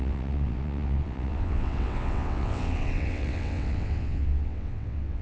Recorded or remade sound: remade